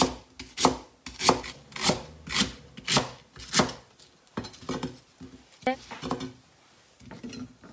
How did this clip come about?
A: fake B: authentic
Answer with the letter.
B